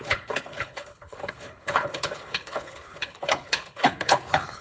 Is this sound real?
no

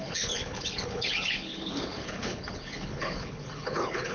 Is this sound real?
no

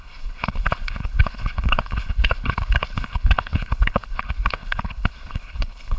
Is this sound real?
no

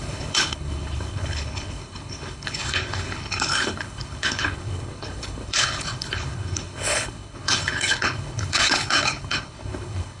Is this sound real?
no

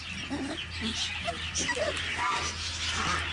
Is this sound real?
yes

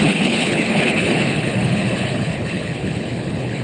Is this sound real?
no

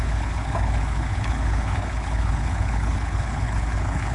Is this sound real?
no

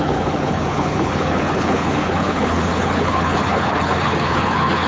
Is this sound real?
no